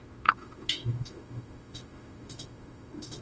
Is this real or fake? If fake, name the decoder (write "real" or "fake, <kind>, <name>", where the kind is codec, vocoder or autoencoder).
fake, autoencoder, DAC-VAE